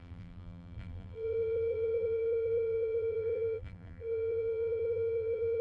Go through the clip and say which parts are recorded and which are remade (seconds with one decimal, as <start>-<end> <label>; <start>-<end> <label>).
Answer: 0.0-5.6 remade